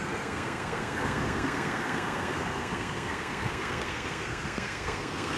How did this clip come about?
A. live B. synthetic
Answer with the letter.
B